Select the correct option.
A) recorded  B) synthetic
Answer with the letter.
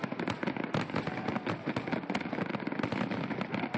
A